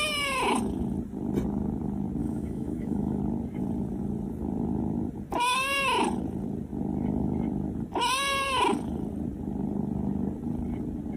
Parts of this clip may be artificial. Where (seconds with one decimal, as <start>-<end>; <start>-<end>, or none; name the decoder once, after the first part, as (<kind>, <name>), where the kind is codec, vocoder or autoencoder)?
2.2-3.2 (autoencoder, DAC-VAE)